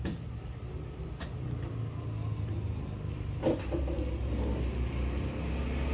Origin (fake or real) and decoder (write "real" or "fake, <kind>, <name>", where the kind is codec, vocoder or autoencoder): real